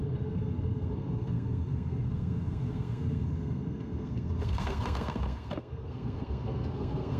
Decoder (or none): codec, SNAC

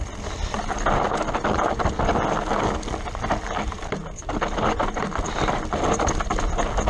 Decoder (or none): none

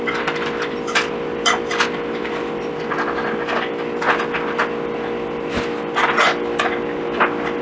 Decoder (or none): none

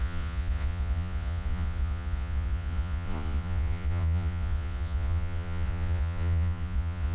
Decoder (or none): vocoder, Vocos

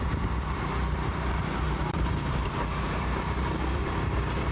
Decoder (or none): vocoder, BigVGAN v2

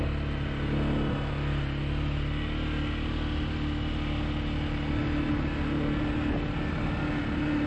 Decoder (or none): none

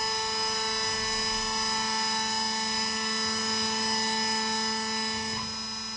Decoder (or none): none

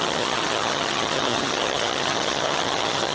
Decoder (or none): vocoder, HiFi-GAN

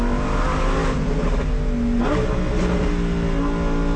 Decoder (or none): none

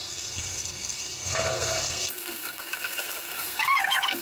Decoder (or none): codec, SNAC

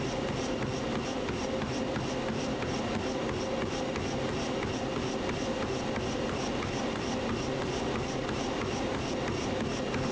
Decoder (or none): none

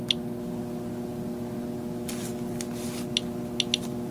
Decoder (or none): none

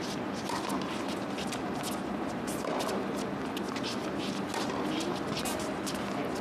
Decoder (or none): none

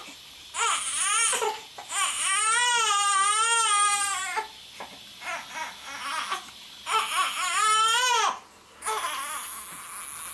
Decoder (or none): none